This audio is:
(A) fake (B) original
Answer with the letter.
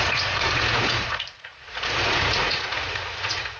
A